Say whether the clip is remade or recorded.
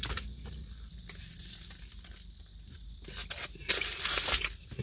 recorded